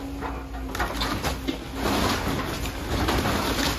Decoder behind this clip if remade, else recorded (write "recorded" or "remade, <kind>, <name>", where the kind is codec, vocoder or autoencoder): recorded